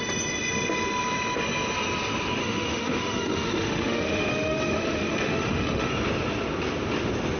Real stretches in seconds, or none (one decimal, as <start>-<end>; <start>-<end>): 0.0-2.4; 5.9-7.4

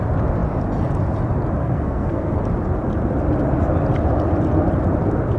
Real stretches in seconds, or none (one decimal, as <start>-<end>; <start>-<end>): 0.0-1.6; 2.4-5.4

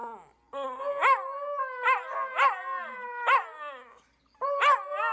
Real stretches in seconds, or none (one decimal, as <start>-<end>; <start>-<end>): 0.0-5.1

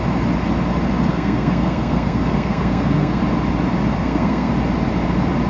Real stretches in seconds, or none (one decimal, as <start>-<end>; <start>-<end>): 0.0-1.1; 3.2-4.0; 4.5-5.5

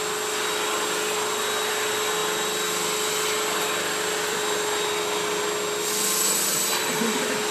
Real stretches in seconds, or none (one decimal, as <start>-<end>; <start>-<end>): 0.0-7.5

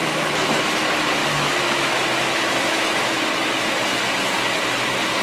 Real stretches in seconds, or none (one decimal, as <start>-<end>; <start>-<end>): 0.6-1.2; 4.3-5.2

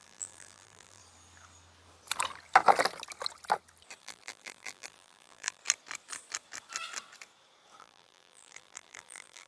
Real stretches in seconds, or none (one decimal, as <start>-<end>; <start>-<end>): 1.0-4.0; 5.6-7.8